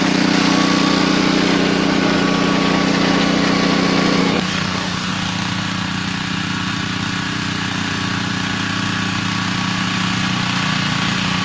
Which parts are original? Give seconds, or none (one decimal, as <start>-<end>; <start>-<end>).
0.0-4.2; 5.1-11.4